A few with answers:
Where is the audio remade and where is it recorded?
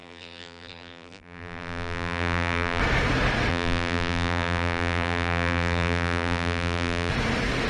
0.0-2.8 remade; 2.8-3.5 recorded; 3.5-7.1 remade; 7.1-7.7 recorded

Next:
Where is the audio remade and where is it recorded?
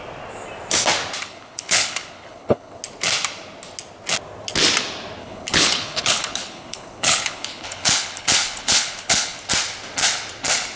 0.0-1.2 recorded; 1.2-2.8 remade; 2.8-5.2 recorded; 5.2-9.4 remade; 9.4-10.8 recorded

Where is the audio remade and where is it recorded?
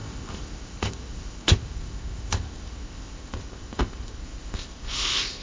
0.0-5.4 remade